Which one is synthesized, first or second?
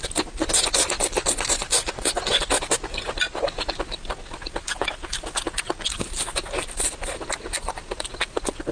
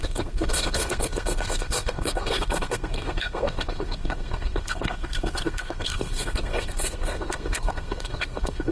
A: second